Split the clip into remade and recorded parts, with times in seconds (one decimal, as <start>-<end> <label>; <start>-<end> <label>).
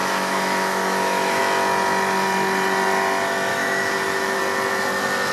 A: 0.0-1.4 remade; 1.4-3.5 recorded; 3.5-4.4 remade; 4.4-5.3 recorded